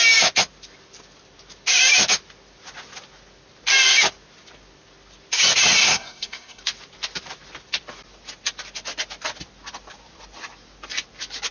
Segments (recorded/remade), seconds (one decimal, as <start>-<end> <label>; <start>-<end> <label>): 0.0-5.8 recorded; 5.8-6.6 remade; 6.6-11.5 recorded